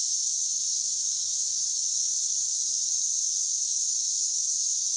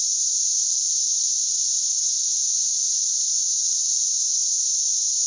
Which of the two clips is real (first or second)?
second